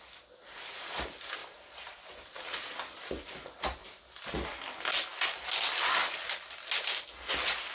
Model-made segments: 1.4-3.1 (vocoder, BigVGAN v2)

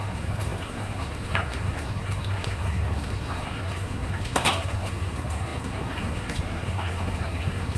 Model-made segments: 0.0-7.8 (codec, SNAC)

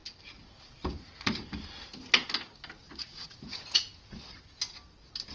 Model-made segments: 3.0-4.2 (vocoder, Vocos)

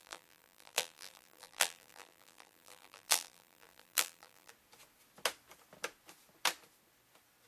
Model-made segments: 0.0-4.5 (vocoder, BigVGAN v2)